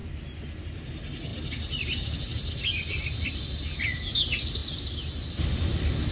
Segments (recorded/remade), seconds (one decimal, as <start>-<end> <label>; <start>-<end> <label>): 0.0-6.1 recorded

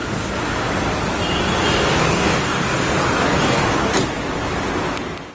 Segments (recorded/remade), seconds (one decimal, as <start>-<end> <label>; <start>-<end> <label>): 0.0-2.1 recorded; 2.1-2.6 remade; 2.6-3.4 recorded; 3.4-3.9 remade; 3.9-5.3 recorded

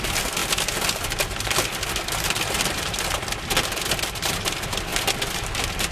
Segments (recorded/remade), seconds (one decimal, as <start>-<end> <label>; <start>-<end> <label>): 0.0-5.9 recorded

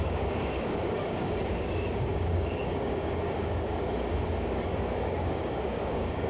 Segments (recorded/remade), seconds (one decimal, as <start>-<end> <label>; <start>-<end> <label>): 0.0-6.3 remade

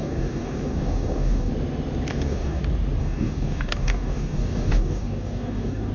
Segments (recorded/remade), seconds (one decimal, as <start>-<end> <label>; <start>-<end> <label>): 0.0-1.5 remade; 1.5-2.1 recorded; 2.1-2.6 remade; 2.6-3.0 recorded; 3.0-5.9 remade